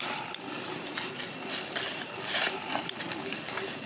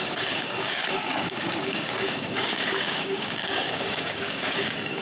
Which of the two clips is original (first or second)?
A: first